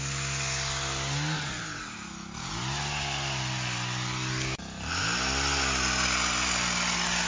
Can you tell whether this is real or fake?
real